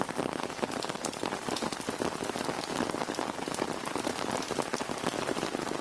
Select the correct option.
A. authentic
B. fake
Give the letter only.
B